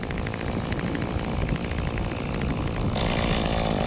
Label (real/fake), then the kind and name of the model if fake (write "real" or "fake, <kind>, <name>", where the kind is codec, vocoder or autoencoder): real